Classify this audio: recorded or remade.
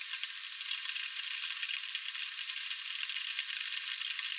recorded